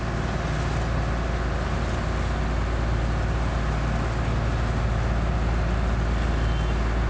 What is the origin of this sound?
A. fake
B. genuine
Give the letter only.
B